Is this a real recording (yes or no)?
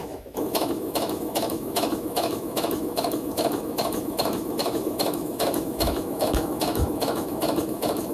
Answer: no